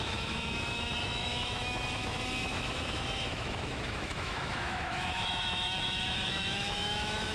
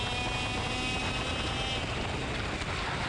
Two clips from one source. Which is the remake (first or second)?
first